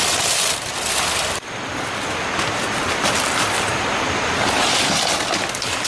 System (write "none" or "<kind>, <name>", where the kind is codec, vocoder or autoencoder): none